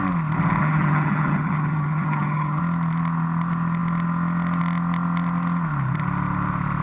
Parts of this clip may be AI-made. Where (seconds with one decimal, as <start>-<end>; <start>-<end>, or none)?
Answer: 0.6-2.6